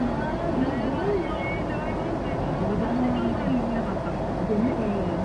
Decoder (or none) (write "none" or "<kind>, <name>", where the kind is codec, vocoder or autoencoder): none